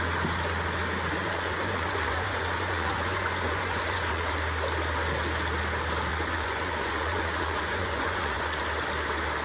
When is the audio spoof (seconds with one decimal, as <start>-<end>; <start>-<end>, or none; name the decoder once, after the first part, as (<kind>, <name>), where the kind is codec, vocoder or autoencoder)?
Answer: 1.2-4.3 (vocoder, Vocos); 6.1-8.6